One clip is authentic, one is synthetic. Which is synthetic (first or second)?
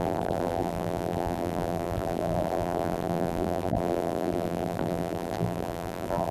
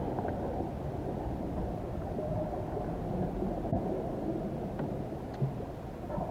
first